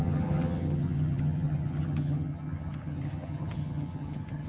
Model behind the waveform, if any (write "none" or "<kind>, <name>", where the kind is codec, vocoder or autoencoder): vocoder, HiFi-GAN